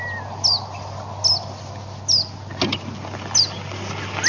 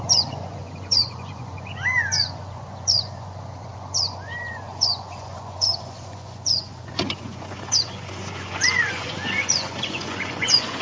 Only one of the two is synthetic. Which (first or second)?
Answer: second